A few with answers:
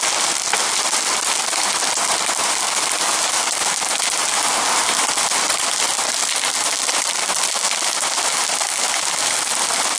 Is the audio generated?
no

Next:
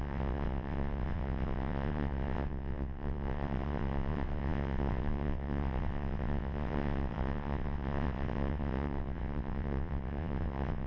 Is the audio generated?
yes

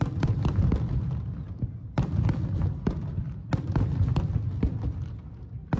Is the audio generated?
no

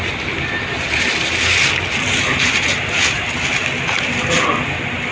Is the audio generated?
no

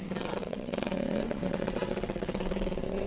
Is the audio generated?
yes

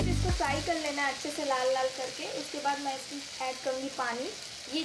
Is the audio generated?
no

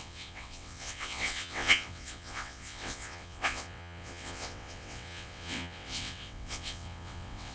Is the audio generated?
yes